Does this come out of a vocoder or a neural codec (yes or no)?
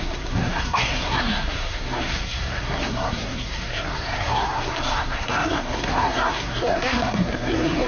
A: yes